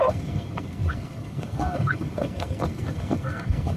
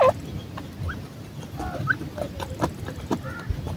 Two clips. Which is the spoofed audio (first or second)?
first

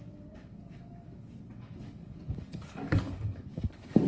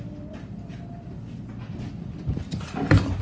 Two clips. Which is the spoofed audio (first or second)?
first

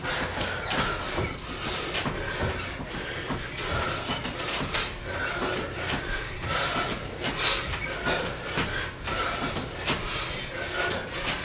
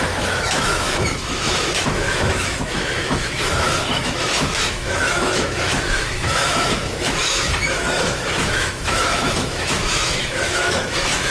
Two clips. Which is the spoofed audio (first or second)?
second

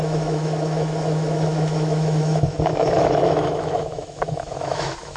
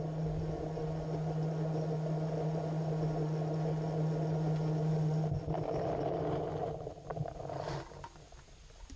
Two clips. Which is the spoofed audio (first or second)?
first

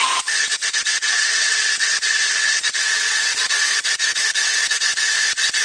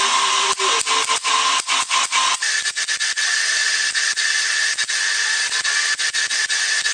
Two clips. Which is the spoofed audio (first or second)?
first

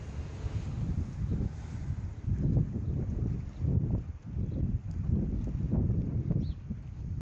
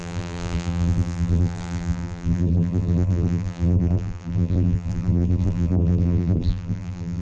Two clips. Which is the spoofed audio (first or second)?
second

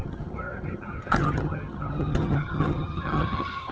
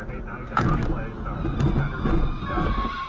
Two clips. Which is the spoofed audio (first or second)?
first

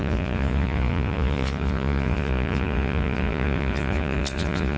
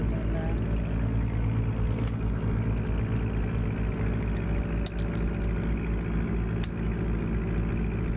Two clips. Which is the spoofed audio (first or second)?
first